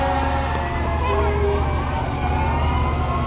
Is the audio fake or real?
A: real